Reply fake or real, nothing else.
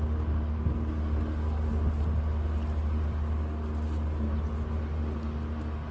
real